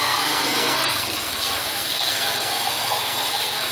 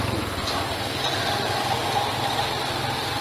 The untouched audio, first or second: second